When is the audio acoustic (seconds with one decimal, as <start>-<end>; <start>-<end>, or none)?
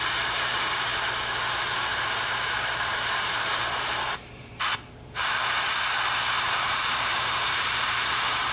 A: 0.9-1.7; 5.4-6.4